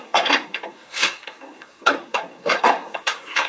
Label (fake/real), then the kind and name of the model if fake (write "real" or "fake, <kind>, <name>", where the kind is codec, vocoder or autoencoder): fake, codec, SNAC